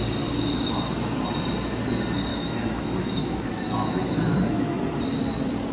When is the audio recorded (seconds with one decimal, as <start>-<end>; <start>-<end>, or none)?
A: 0.0-2.3; 4.8-5.7